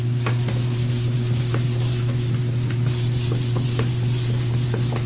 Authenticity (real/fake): real